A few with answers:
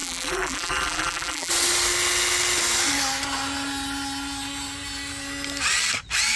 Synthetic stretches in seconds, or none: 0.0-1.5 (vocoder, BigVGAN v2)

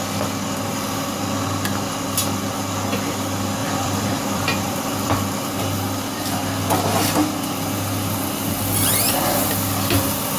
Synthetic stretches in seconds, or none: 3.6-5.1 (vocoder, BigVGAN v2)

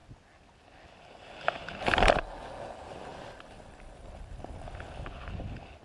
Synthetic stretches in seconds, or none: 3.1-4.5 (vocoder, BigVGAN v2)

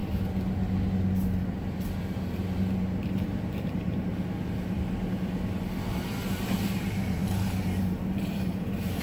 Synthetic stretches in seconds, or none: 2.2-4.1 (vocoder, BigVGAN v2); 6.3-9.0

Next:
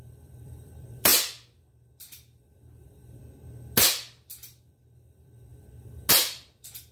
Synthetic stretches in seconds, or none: 0.0-1.1 (vocoder, BigVGAN v2); 2.8-3.2; 4.8-5.5; 6.1-6.9

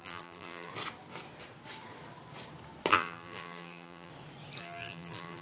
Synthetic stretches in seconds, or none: 0.0-0.7 (vocoder, BigVGAN v2); 2.9-4.1; 4.6-5.4